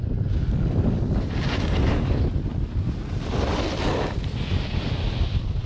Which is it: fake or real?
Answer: real